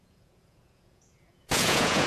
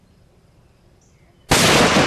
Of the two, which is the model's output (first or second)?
first